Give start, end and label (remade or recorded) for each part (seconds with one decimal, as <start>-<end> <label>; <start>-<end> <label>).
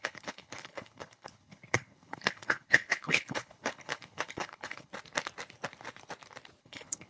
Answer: 0.0-4.9 remade; 4.9-6.6 recorded; 6.6-7.1 remade